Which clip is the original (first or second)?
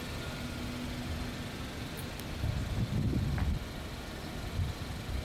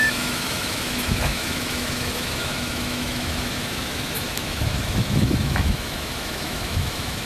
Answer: first